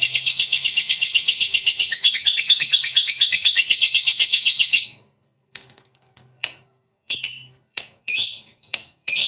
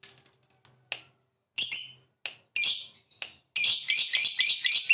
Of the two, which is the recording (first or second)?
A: second